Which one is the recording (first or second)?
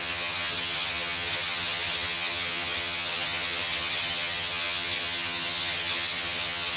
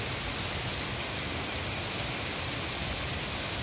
second